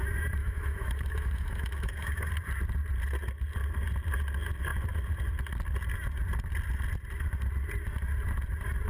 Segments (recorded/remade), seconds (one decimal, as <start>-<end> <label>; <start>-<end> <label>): 0.0-0.4 recorded; 0.4-2.3 remade; 2.3-8.9 recorded